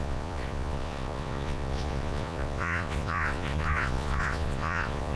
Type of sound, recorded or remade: remade